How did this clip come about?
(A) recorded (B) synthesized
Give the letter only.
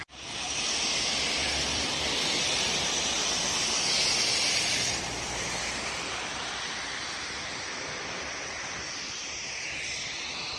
B